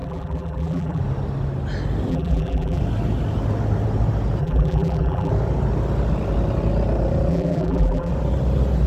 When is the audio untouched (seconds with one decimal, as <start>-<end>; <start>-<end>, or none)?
1.0-2.1; 2.8-4.4; 5.3-7.3; 8.1-8.9